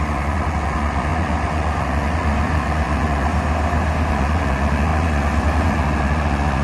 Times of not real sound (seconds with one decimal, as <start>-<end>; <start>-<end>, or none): 0.0-3.3; 4.1-6.6

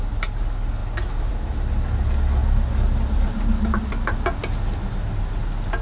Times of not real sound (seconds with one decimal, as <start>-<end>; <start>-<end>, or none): none

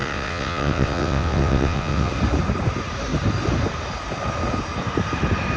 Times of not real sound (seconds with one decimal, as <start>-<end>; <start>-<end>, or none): 0.0-2.1

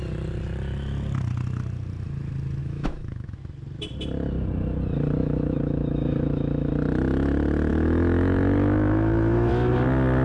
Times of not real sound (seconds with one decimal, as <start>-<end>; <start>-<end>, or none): 2.6-3.4; 5.2-6.7; 7.7-9.5

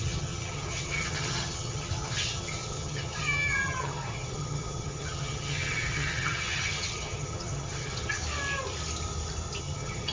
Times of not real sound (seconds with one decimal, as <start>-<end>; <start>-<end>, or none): 0.0-8.2; 9.6-10.1

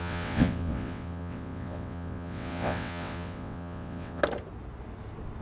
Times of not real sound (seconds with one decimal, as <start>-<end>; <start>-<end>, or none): 0.0-4.2